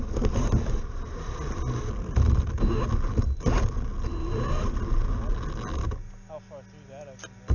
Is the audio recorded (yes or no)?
yes